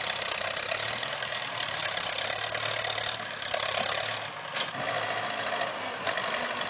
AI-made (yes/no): no